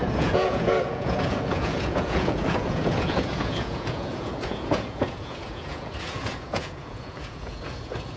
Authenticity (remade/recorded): remade